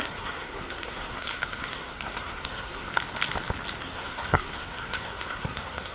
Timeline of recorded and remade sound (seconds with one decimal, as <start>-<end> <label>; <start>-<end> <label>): 0.0-2.9 remade; 2.9-3.8 recorded; 3.8-5.9 remade